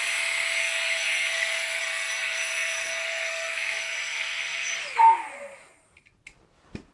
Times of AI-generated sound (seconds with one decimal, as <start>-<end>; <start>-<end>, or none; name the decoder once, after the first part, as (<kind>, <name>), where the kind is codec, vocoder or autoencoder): 0.6-4.7 (codec, SNAC)